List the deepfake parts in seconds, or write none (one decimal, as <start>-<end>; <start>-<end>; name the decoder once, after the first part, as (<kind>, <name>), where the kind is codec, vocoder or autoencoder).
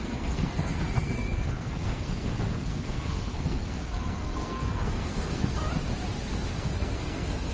0.0-5.6 (codec, SNAC); 6.5-7.5